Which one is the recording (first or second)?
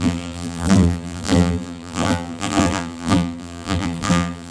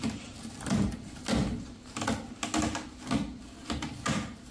second